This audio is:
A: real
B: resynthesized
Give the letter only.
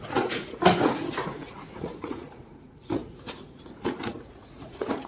B